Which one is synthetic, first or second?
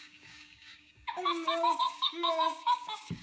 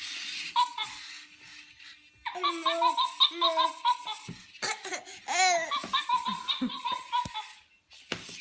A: first